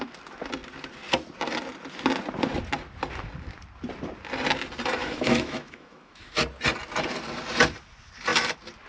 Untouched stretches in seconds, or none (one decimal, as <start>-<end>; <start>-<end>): 0.0-5.0; 6.3-8.9